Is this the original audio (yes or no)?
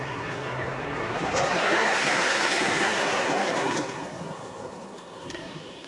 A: no